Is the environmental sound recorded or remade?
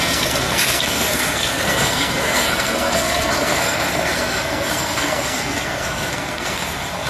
remade